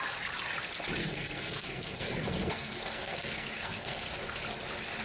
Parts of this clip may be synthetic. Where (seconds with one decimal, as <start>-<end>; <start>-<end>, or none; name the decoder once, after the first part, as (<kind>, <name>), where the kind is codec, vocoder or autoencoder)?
1.0-4.0 (codec, SNAC)